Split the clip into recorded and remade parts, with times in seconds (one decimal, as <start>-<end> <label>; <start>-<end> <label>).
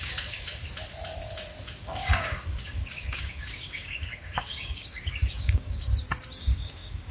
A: 0.0-0.6 remade; 0.6-1.8 recorded; 1.8-5.9 remade; 5.9-6.4 recorded; 6.4-7.1 remade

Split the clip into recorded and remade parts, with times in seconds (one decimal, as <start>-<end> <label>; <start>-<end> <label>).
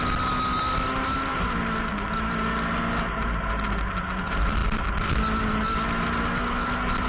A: 0.0-7.1 recorded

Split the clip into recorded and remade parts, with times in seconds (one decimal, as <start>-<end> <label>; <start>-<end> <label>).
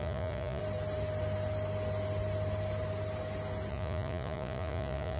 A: 0.0-0.6 remade; 0.6-3.7 recorded; 3.7-5.2 remade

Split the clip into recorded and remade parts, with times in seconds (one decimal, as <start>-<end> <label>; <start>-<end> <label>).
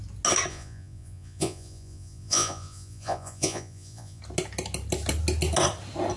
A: 0.0-0.5 recorded; 0.5-4.2 remade; 4.2-6.2 recorded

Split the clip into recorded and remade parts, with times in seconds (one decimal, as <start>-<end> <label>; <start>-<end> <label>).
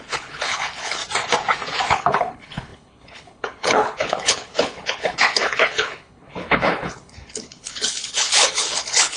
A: 0.0-1.0 remade; 1.0-1.9 recorded; 1.9-9.2 remade